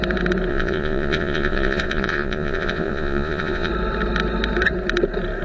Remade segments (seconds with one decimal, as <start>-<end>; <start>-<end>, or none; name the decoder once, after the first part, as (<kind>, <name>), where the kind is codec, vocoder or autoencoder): 0.5-3.7 (vocoder, Vocos)